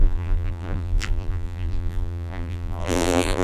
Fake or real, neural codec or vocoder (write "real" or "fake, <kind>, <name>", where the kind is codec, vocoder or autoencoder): fake, vocoder, BigVGAN v2